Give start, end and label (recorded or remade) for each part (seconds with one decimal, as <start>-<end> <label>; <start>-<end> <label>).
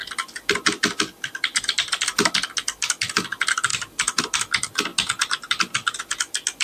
0.0-6.6 recorded